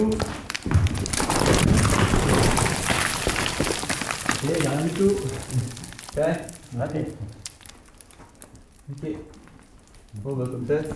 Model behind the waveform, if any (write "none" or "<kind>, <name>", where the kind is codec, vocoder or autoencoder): none